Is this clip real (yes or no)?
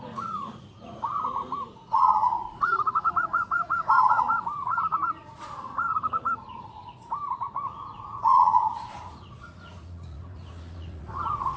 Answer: no